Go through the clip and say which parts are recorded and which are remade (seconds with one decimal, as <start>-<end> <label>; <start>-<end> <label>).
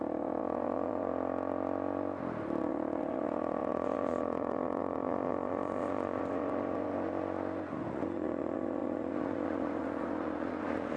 0.0-1.1 remade; 1.1-2.6 recorded; 2.6-11.0 remade